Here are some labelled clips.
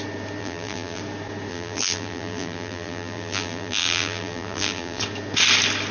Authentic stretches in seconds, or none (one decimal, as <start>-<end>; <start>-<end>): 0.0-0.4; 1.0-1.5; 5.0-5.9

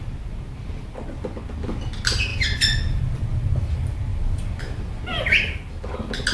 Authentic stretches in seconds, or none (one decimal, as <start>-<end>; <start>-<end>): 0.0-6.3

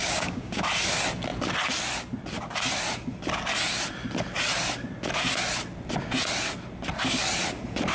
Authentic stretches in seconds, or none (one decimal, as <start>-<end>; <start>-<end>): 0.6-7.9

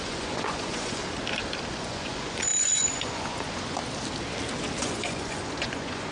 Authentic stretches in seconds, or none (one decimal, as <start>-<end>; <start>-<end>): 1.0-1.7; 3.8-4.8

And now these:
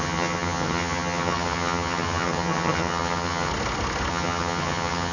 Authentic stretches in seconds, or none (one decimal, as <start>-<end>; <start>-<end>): 3.5-4.1

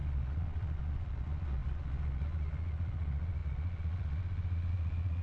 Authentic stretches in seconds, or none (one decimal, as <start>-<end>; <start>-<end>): none